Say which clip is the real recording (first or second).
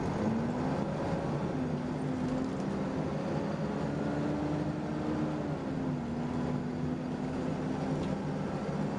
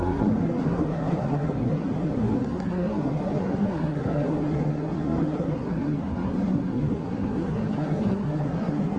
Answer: first